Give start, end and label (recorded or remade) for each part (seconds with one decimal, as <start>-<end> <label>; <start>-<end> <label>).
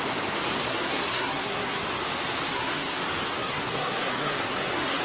0.0-0.7 recorded; 0.7-1.8 remade; 1.8-2.5 recorded; 2.5-3.0 remade; 3.0-3.4 recorded; 3.4-5.0 remade